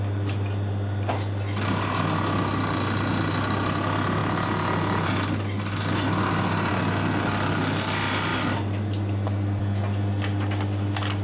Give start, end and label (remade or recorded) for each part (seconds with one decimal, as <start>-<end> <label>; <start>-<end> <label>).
0.0-11.2 recorded